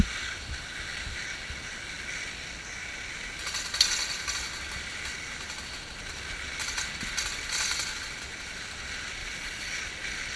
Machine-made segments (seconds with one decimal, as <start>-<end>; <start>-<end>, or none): 9.2-9.8